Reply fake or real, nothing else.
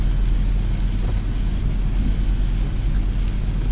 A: real